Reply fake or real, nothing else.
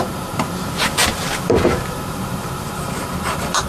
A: fake